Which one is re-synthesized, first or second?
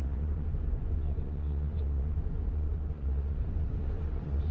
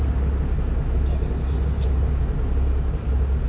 first